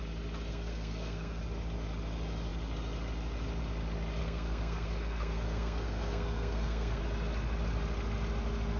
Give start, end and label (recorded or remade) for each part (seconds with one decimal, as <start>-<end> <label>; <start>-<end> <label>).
0.0-0.5 recorded; 0.5-1.4 remade; 1.4-4.2 recorded; 4.2-7.0 remade; 7.0-8.8 recorded